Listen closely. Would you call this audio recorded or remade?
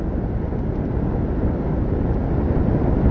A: recorded